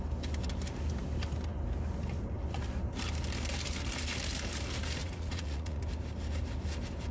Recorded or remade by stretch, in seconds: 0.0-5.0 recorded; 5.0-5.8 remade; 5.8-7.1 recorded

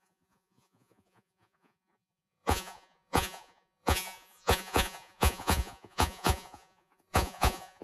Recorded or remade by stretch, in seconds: 0.0-7.8 remade